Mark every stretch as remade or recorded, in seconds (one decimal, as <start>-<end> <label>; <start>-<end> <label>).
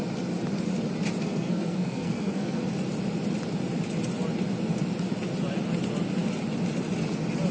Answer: 0.0-1.2 recorded; 1.2-2.6 remade; 2.6-7.5 recorded